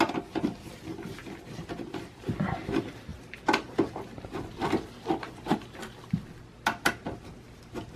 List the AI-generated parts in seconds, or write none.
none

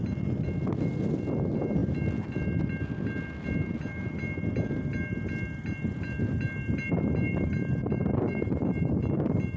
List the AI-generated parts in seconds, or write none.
none

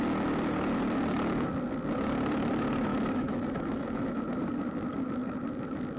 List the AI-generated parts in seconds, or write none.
2.9-4.2 (autoencoder, DAC-VAE)

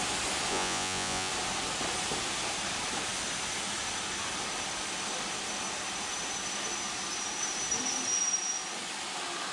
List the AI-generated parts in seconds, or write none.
0.5-1.3 (vocoder, Vocos)

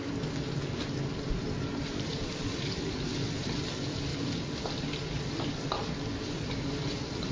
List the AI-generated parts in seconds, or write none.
1.3-4.1 (vocoder, BigVGAN v2); 5.4-7.3